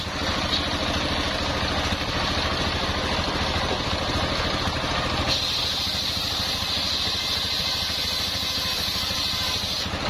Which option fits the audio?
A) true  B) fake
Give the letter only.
A